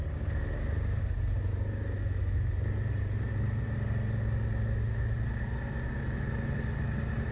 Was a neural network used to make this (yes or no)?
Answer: no